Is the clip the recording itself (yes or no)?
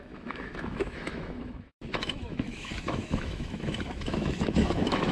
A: no